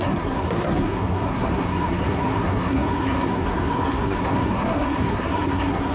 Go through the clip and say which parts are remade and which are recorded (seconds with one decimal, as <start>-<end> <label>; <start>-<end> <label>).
0.0-5.9 remade